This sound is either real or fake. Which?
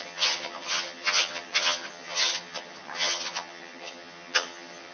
fake